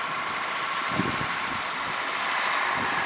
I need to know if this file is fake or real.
fake